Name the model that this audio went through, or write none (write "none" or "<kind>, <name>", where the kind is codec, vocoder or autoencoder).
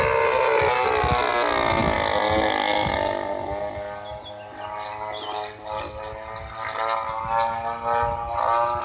none